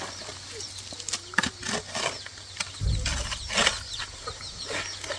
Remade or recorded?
recorded